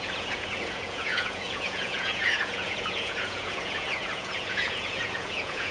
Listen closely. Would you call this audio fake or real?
fake